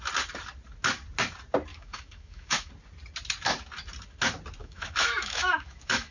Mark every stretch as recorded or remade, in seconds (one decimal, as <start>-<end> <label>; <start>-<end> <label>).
0.0-1.7 recorded; 1.7-2.7 remade; 2.7-4.6 recorded; 4.6-6.1 remade